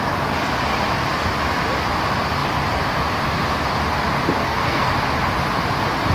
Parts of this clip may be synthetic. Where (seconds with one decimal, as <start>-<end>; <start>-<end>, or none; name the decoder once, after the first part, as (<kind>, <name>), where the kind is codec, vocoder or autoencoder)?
4.4-4.9 (codec, SNAC)